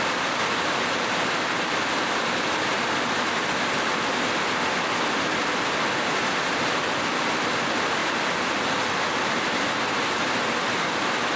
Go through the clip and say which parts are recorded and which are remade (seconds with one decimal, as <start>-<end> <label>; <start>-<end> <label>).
0.0-11.4 recorded